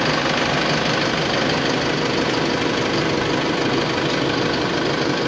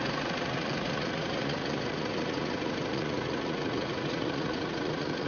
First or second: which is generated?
second